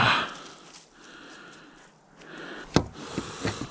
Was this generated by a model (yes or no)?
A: no